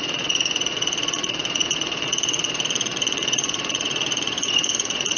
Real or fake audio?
fake